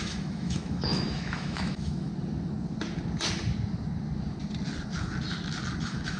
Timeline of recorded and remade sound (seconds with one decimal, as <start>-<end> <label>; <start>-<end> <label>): 0.0-2.1 remade; 2.1-5.8 recorded; 5.8-6.2 remade